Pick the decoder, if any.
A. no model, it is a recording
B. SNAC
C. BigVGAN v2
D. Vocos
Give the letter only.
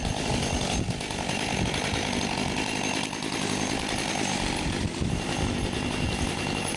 C